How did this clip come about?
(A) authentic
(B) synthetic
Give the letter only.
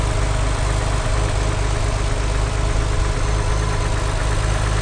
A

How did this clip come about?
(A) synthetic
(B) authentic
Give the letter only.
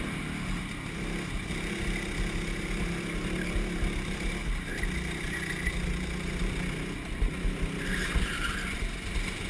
B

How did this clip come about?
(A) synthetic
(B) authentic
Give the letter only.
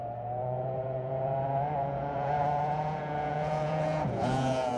A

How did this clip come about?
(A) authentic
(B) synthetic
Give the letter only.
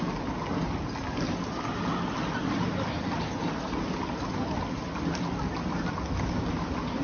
A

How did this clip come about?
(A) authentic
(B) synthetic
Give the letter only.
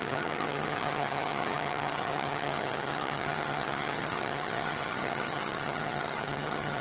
B